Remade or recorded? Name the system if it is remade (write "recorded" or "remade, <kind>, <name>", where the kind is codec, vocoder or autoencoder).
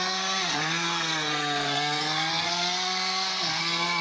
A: remade, codec, SNAC